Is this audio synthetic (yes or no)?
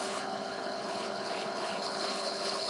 yes